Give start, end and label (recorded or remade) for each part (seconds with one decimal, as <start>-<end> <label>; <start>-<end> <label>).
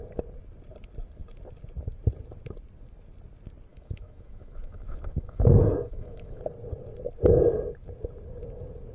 0.0-3.7 recorded; 3.7-6.4 remade; 6.4-8.9 recorded